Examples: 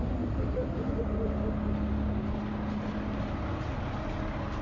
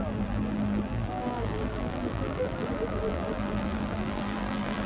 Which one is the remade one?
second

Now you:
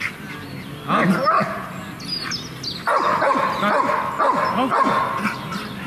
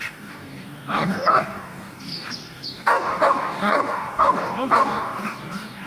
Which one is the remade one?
second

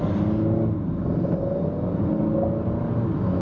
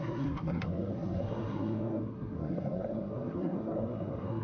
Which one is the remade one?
second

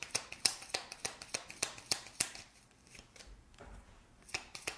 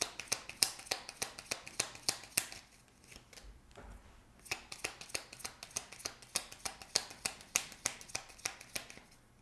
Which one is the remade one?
first